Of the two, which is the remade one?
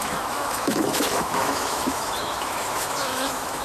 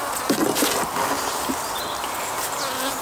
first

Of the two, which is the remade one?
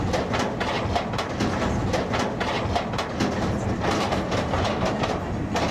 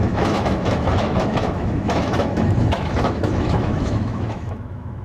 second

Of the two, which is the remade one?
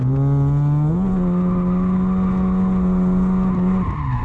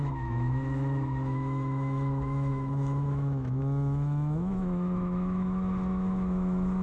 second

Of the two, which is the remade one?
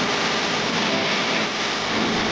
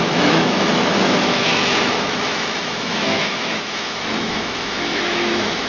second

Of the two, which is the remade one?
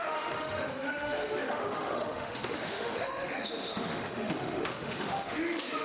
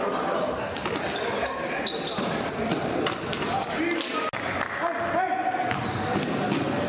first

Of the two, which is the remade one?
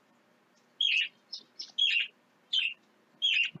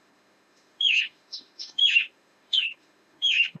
second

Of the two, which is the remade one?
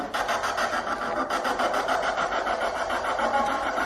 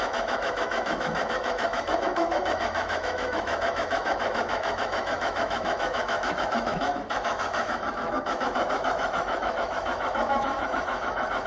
second